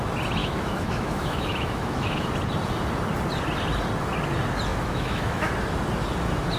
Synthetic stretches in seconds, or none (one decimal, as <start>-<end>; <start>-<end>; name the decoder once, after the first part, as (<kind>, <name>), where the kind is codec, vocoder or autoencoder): 0.4-2.3 (autoencoder, DAC-VAE); 4.7-5.5